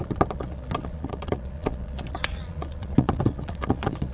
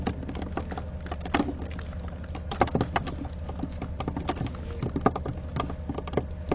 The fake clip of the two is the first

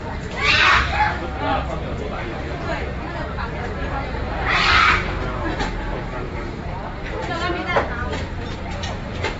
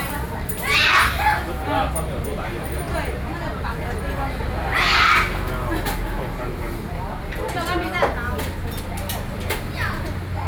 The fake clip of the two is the first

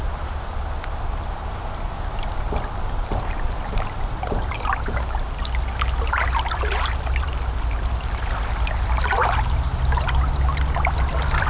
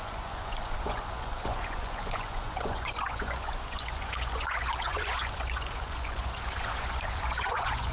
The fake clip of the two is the second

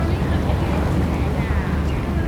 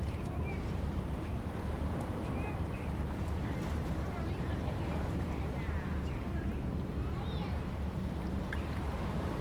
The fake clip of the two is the second